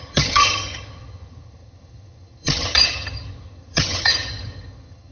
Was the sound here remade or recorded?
remade